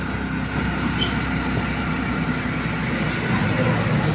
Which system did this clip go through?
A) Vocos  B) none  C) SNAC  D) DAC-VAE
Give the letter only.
B